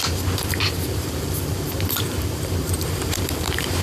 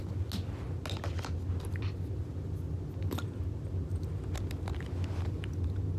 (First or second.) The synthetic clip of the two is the first